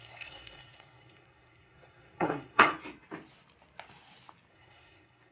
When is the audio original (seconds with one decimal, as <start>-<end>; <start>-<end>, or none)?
2.7-4.5